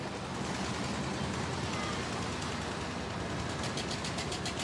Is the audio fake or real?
real